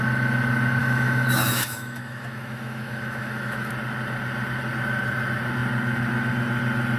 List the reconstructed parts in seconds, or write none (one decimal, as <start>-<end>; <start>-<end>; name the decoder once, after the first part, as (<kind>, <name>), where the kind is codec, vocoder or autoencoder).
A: 0.8-3.7 (autoencoder, DAC-VAE)